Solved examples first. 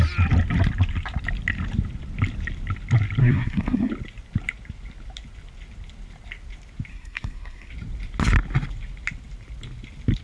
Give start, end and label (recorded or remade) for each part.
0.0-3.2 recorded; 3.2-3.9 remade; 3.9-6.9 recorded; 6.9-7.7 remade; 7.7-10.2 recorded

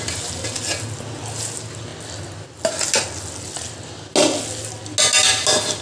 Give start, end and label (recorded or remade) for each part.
0.0-5.8 recorded

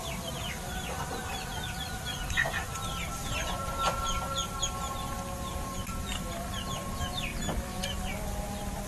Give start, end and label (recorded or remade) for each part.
0.0-8.9 recorded

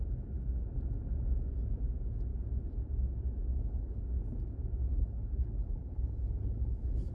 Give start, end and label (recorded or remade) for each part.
0.0-3.5 recorded; 3.5-4.0 remade; 4.0-4.9 recorded; 4.9-7.1 remade

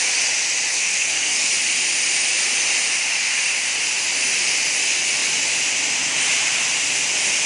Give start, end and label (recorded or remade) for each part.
0.0-0.7 recorded; 0.7-1.5 remade; 1.5-7.5 recorded